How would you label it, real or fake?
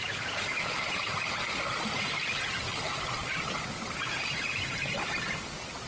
real